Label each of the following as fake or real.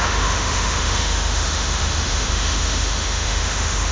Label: fake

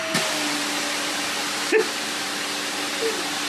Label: real